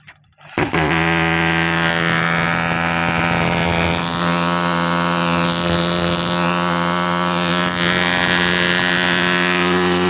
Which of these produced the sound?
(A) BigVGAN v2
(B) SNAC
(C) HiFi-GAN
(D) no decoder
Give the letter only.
D